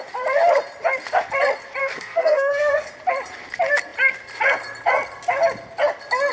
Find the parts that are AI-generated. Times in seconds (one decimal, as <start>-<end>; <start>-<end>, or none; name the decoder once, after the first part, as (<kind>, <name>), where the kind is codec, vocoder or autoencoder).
1.8-2.9 (codec, SNAC)